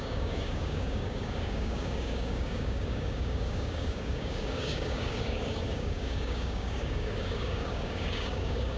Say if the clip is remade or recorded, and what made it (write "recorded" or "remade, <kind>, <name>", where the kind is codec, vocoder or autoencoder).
remade, codec, DAC